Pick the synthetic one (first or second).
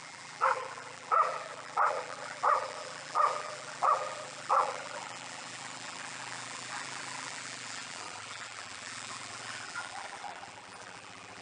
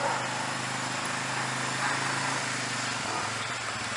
first